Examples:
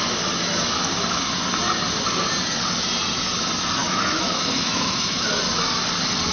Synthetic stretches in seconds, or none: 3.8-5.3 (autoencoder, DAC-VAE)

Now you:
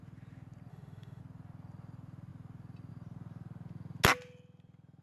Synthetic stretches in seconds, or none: 0.7-1.2 (autoencoder, DAC-VAE)

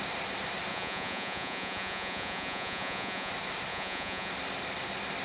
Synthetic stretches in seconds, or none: 0.7-3.3 (vocoder, Vocos); 3.7-4.3

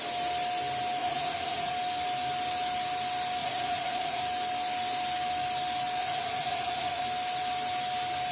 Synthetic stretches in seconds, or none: 1.0-1.7 (vocoder, Vocos); 3.4-4.2; 6.0-7.0